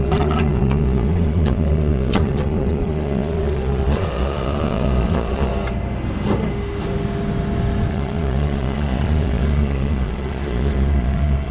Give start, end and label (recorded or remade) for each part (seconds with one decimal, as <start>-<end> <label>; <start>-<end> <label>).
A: 0.0-5.5 remade; 5.5-7.9 recorded; 7.9-11.5 remade